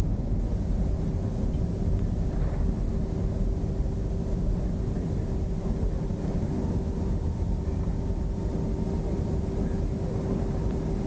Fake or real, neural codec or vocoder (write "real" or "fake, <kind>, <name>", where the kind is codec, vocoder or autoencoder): real